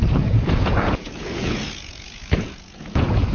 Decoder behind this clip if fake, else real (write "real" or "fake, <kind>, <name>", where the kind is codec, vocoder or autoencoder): fake, vocoder, Vocos